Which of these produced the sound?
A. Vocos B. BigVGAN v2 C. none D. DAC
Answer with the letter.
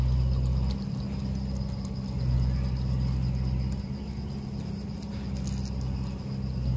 C